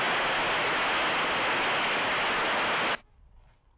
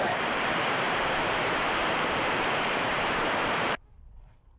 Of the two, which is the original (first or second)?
first